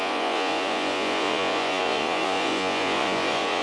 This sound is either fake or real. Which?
fake